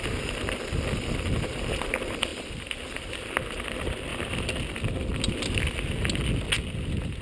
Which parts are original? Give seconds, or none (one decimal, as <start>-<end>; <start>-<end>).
0.0-7.2